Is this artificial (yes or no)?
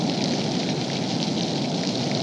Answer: no